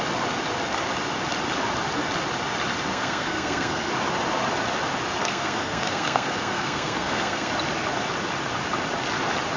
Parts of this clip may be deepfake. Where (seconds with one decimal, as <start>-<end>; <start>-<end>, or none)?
2.9-3.9; 5.2-7.5